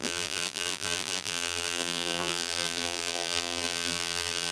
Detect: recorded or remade remade